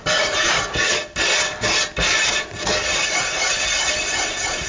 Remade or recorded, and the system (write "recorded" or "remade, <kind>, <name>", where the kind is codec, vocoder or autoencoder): recorded